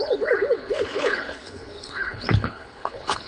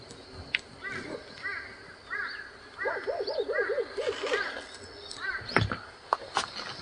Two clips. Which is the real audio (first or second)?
second